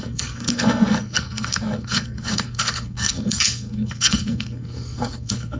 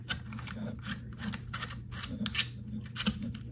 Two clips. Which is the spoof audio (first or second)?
first